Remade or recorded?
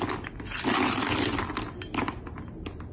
recorded